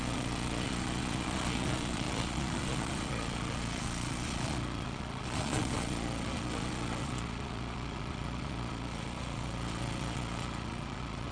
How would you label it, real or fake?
fake